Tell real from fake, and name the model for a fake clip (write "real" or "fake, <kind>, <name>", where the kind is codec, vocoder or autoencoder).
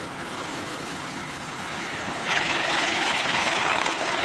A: fake, codec, HILCodec